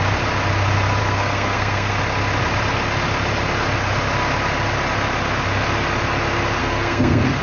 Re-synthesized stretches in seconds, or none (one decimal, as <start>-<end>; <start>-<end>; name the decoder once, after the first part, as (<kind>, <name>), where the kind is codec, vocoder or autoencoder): 1.0-2.0 (codec, SNAC); 6.6-7.4